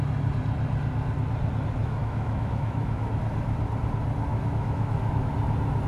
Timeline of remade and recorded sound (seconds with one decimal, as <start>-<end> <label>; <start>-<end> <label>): 0.0-1.8 recorded; 1.8-3.1 remade; 3.1-4.3 recorded; 4.3-5.3 remade; 5.3-5.9 recorded